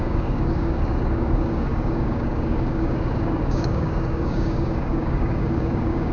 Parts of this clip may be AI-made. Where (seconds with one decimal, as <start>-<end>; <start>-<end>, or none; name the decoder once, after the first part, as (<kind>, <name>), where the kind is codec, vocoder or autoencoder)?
0.0-6.1 (codec, DAC)